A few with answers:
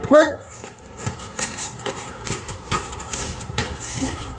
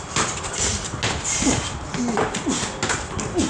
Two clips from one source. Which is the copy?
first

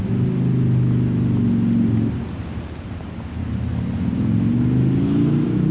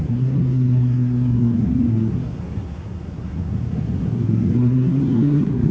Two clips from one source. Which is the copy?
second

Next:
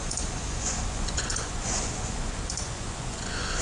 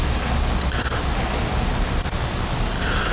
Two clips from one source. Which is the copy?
first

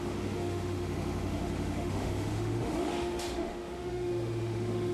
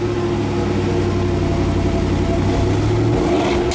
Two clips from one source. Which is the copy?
first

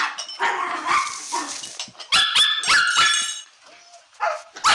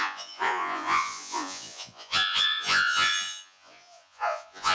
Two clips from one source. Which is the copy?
second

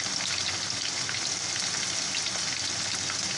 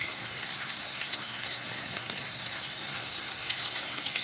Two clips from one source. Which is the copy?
second